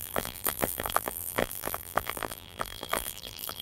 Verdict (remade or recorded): remade